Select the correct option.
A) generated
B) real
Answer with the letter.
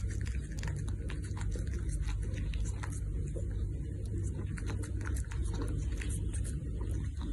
B